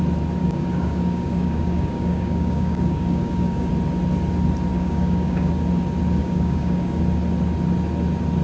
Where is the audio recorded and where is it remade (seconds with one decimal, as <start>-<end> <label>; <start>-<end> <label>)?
0.0-0.4 recorded; 0.4-3.7 remade; 3.7-4.7 recorded; 4.7-5.5 remade; 5.5-6.2 recorded; 6.2-7.0 remade; 7.0-8.4 recorded